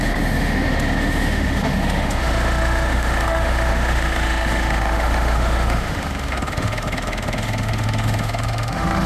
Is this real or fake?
fake